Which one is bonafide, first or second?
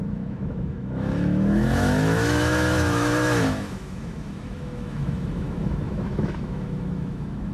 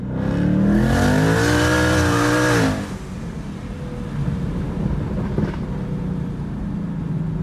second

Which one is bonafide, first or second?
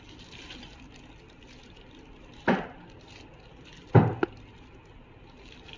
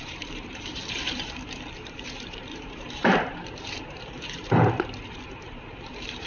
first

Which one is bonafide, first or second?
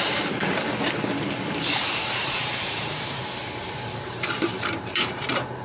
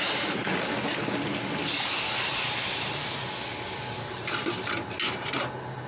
second